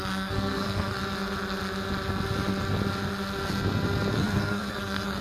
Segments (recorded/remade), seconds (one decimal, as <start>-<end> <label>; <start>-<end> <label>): 0.0-1.0 remade; 1.0-4.1 recorded; 4.1-5.2 remade